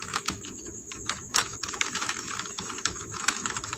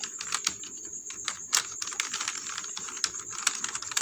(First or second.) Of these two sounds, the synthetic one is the first